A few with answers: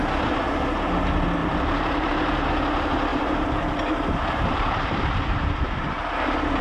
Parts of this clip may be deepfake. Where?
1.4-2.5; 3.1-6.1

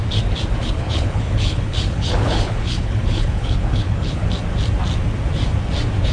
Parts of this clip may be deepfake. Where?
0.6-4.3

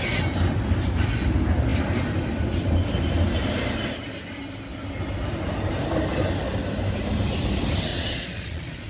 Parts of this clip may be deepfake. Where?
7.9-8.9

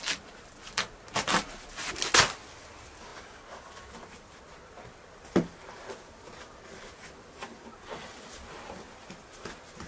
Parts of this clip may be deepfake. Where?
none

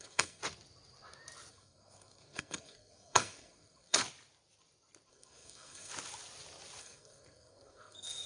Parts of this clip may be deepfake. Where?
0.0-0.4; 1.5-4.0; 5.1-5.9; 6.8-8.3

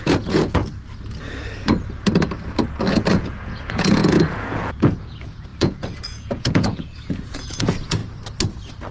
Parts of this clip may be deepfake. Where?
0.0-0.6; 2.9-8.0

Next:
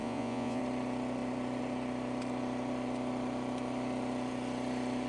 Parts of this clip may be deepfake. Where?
0.0-0.6